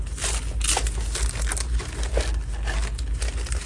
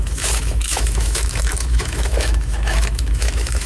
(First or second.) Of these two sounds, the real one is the first